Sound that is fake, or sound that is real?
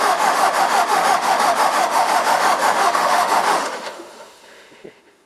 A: fake